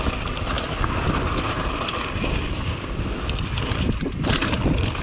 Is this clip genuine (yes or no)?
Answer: yes